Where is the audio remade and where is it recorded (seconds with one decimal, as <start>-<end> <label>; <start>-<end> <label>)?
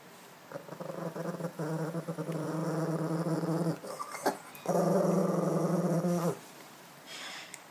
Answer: 0.0-2.6 remade; 2.6-4.7 recorded; 4.7-5.2 remade; 5.2-6.5 recorded; 6.5-7.7 remade